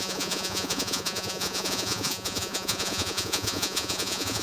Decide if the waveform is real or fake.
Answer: fake